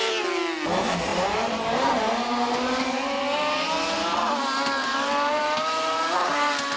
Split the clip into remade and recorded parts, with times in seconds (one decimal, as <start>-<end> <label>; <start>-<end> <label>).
0.0-1.1 recorded; 1.1-4.2 remade; 4.2-4.8 recorded; 4.8-6.8 remade